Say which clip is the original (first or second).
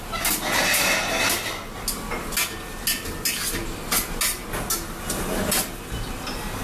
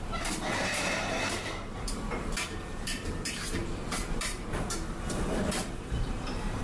first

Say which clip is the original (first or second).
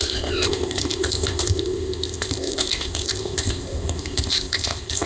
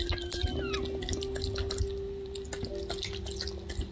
second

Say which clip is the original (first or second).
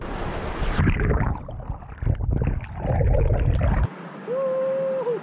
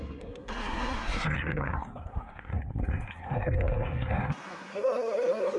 first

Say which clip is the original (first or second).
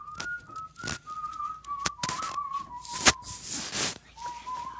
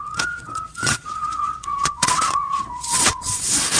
first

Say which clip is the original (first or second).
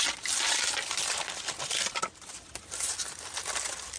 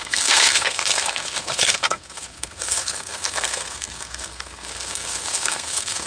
first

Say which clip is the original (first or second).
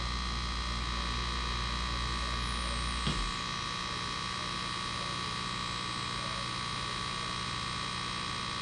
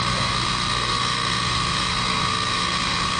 first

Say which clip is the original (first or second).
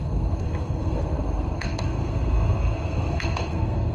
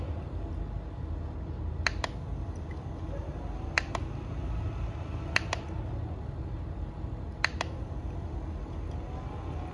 second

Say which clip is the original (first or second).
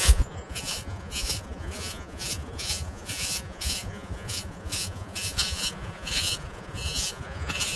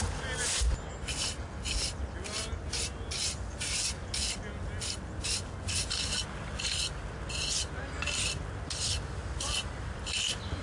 second